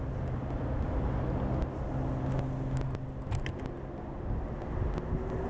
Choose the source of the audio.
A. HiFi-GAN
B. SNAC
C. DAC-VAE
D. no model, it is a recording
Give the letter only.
D